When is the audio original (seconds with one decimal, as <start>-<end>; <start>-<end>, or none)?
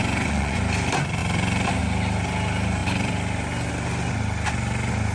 0.6-5.1